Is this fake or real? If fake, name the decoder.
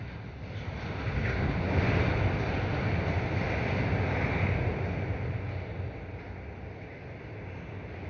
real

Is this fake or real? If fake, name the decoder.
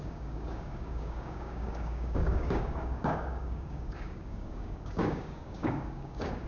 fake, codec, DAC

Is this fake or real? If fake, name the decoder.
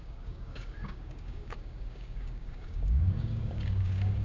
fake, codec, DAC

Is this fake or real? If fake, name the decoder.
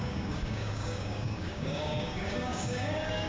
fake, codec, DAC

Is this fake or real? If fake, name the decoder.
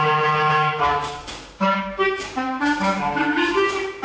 fake, codec, DAC